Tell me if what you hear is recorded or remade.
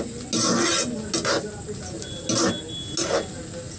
recorded